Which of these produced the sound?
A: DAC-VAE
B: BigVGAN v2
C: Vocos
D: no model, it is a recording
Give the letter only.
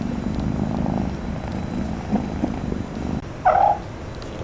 D